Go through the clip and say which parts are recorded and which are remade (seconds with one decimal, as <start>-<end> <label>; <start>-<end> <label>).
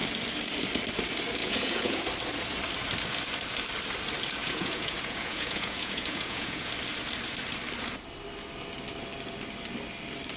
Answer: 0.0-1.4 recorded; 1.4-2.0 remade; 2.0-4.4 recorded; 4.4-6.7 remade; 6.7-10.4 recorded